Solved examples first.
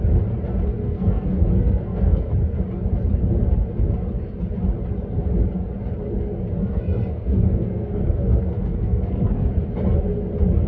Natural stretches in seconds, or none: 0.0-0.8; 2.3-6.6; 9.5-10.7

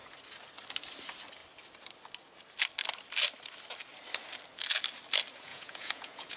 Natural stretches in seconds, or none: 0.0-5.5

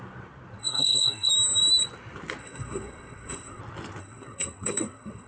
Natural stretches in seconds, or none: 0.0-0.6; 1.3-2.4; 3.6-4.0

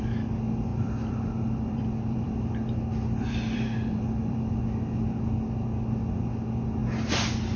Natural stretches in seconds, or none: 0.0-0.7; 4.6-7.6

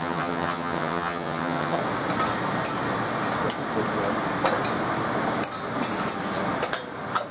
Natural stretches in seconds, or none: 1.8-7.3

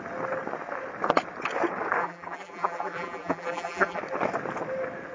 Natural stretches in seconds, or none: 0.0-2.0; 4.0-5.1